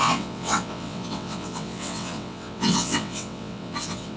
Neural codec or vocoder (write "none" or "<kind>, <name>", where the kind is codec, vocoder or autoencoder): vocoder, WaveNeXt